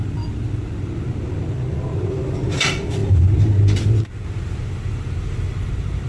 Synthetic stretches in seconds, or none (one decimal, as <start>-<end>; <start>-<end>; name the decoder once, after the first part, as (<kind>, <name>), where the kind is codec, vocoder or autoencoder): none